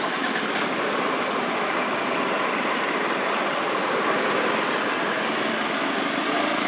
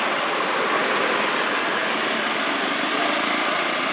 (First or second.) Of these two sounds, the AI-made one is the second